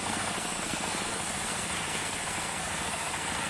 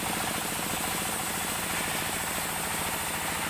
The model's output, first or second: first